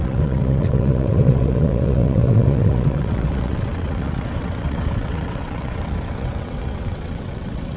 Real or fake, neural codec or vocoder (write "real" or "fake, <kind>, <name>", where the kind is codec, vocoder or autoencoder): fake, vocoder, WaveNeXt